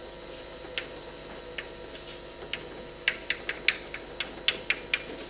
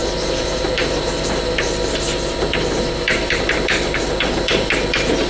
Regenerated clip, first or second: second